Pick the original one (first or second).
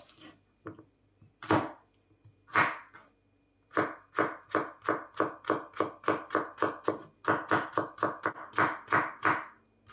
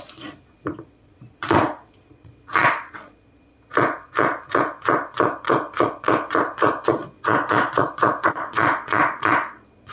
first